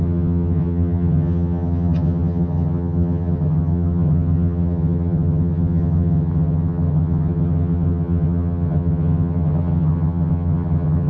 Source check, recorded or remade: remade